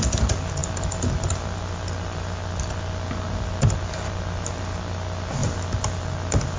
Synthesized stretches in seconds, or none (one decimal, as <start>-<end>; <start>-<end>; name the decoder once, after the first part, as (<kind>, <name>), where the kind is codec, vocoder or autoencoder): none